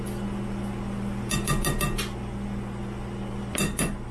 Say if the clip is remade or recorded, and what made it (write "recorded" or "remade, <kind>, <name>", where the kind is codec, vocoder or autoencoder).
recorded